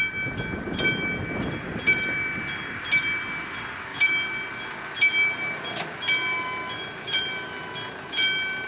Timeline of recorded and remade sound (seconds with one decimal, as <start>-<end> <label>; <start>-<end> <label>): 0.0-8.7 recorded